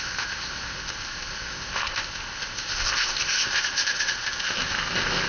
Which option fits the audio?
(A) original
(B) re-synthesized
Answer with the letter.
B